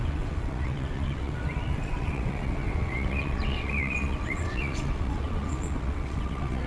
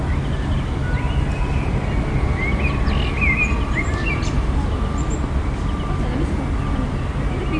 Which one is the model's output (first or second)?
first